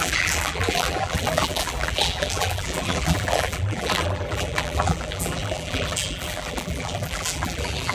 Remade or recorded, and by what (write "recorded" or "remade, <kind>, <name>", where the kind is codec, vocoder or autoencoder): remade, vocoder, BigVGAN v2